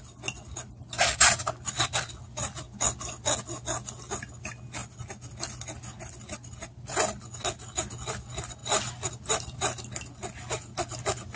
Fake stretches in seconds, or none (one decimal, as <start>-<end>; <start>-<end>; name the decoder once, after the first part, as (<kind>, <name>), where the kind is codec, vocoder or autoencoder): none